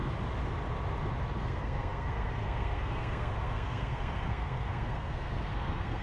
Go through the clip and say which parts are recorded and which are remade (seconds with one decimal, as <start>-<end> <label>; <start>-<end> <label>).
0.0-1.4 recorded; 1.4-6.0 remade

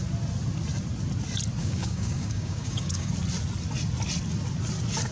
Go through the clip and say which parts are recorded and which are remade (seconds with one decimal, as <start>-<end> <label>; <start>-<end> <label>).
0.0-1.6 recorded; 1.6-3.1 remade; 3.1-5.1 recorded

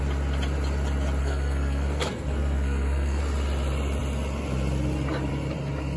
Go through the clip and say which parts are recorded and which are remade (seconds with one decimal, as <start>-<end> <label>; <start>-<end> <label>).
0.0-1.2 recorded; 1.2-3.2 remade; 3.2-6.0 recorded